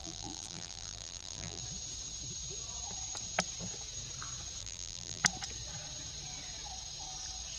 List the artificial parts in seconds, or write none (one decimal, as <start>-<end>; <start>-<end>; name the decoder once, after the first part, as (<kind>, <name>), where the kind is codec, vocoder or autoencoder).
0.0-1.6 (vocoder, BigVGAN v2); 4.6-5.2